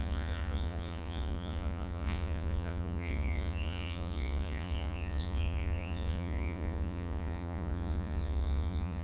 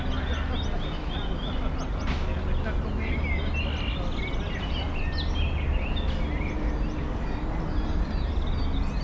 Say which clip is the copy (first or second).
first